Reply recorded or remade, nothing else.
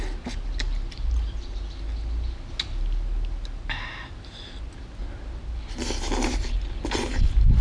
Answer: recorded